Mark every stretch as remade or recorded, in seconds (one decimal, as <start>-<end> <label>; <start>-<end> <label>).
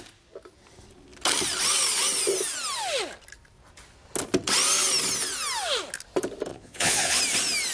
0.0-6.5 recorded; 6.5-7.2 remade; 7.2-7.7 recorded